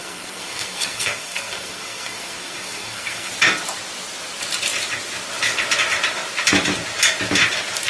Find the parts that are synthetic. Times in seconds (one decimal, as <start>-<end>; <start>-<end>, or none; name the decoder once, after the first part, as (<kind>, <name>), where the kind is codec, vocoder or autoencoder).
0.0-3.3 (codec, SNAC)